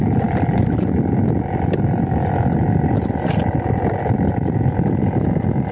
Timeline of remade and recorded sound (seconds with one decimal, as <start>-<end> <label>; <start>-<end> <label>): 0.0-5.7 recorded